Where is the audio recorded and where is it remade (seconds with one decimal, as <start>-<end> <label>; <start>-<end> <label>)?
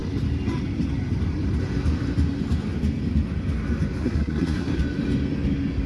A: 0.0-4.0 recorded; 4.0-4.8 remade; 4.8-5.9 recorded